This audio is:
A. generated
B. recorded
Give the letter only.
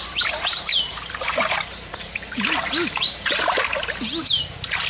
A